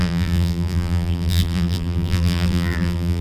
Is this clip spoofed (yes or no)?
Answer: yes